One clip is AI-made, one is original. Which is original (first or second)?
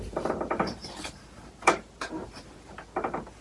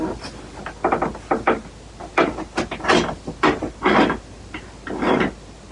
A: second